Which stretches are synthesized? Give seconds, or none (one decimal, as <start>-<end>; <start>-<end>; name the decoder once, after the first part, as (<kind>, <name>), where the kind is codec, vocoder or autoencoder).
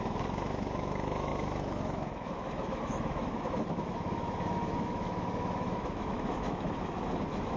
0.0-7.6 (autoencoder, DAC-VAE)